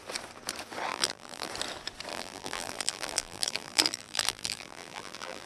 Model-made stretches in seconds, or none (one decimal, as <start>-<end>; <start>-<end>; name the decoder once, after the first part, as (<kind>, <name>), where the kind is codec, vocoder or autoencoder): 0.9-1.5 (vocoder, BigVGAN v2); 2.1-5.5